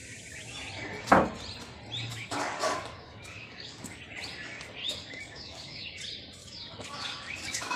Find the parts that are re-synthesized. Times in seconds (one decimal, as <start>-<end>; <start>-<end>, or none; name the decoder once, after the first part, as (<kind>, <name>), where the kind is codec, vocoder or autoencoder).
2.1-4.0 (codec, DAC); 4.8-6.0; 6.4-7.8